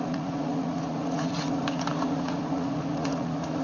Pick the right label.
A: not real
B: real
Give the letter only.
A